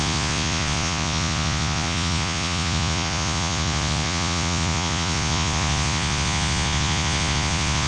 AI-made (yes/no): yes